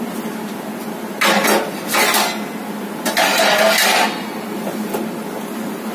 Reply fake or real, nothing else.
real